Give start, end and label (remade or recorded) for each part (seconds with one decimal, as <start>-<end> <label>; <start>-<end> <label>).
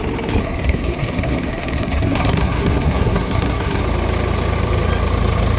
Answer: 0.0-0.4 recorded; 0.4-3.8 remade; 3.8-5.6 recorded